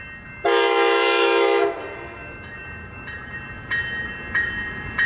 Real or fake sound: real